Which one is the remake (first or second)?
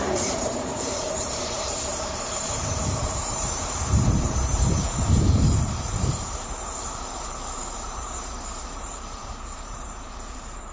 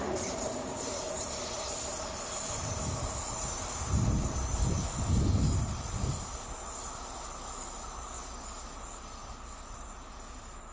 first